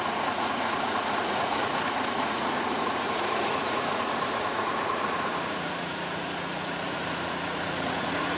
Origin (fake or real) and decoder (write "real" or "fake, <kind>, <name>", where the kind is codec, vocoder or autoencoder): fake, vocoder, Vocos